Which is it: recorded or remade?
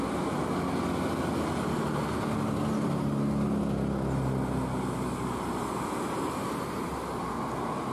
recorded